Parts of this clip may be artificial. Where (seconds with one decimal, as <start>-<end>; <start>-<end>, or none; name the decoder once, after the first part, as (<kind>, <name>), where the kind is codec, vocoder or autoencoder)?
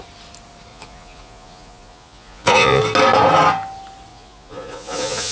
0.7-2.8 (vocoder, Vocos); 4.1-5.3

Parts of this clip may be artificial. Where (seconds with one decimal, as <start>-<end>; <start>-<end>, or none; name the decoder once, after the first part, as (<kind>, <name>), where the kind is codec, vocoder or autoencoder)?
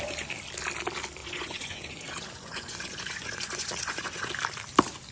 1.2-4.3 (vocoder, Vocos)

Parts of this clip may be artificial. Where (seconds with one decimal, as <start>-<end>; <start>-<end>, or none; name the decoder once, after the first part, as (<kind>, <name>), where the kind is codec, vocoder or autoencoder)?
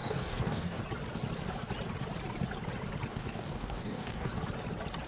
0.0-0.8 (codec, DAC); 3.1-4.3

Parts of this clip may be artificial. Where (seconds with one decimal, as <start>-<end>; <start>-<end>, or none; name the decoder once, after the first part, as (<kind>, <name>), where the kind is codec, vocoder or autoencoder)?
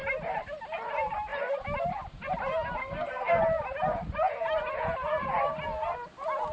2.8-3.4 (codec, SNAC)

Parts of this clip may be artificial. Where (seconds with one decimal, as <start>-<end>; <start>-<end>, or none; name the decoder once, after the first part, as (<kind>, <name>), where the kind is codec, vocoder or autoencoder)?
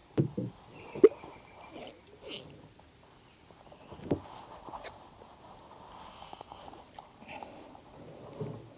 6.1-6.6 (codec, SNAC)